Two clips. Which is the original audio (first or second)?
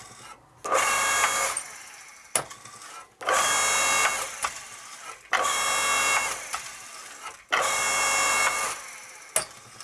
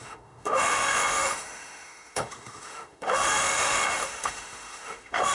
first